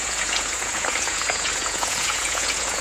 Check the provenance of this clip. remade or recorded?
remade